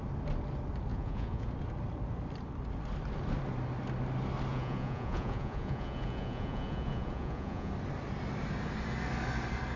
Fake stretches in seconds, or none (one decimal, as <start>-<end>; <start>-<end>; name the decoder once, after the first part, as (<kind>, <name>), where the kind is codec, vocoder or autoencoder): 0.9-1.5 (vocoder, Vocos); 4.5-7.7